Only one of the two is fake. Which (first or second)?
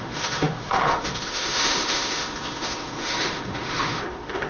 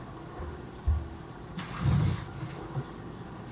first